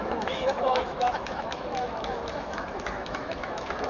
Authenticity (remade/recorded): remade